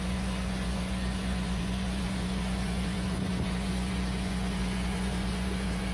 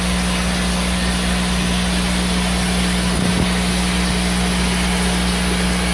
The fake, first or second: first